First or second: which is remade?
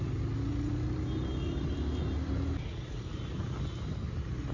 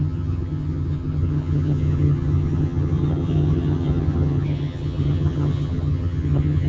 second